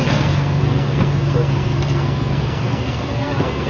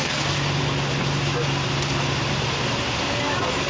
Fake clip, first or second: first